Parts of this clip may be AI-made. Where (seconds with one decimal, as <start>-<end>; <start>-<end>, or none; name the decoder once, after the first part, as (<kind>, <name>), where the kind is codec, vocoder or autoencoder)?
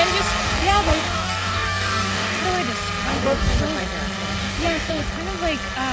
0.4-2.4 (codec, DAC); 3.1-3.6; 4.4-5.1